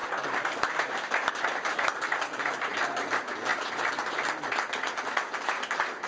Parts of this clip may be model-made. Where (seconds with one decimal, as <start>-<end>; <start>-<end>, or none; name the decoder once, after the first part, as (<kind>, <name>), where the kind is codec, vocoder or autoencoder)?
none